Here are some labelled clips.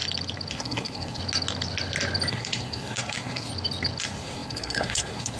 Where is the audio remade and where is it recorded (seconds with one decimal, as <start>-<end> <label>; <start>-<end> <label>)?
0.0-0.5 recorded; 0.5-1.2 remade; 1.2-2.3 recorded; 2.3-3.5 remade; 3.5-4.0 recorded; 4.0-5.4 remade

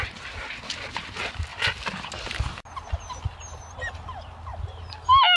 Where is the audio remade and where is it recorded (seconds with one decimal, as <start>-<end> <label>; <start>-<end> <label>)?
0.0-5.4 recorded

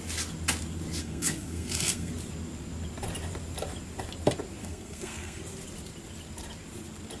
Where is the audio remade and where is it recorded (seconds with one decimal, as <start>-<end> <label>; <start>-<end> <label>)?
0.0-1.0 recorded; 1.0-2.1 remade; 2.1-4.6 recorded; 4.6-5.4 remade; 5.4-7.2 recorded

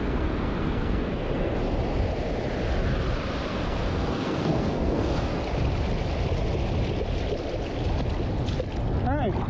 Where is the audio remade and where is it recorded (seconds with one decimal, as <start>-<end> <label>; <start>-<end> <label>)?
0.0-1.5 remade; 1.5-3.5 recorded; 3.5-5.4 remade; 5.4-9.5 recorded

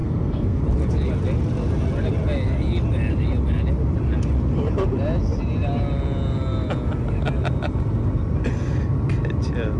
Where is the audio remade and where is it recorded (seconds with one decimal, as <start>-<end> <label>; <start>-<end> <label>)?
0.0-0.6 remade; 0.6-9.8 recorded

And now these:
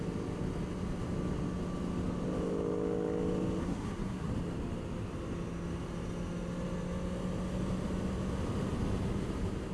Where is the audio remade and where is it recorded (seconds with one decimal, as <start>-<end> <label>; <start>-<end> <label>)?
0.0-3.6 recorded; 3.6-4.3 remade; 4.3-9.7 recorded

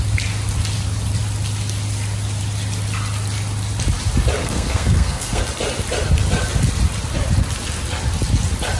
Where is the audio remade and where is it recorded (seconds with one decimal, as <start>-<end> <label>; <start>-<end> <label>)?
0.0-4.4 recorded; 4.4-5.4 remade; 5.4-8.8 recorded